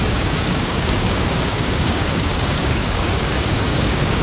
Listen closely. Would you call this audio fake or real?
fake